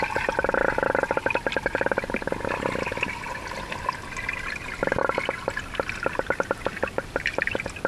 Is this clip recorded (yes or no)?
yes